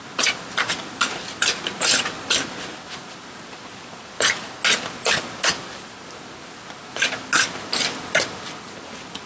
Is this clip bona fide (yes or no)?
yes